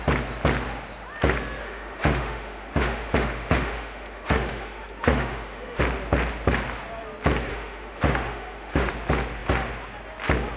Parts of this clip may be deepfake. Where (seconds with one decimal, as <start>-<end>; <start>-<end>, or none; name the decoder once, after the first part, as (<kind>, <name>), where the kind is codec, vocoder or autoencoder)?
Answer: 1.6-5.8 (autoencoder, DAC-VAE); 7.5-8.9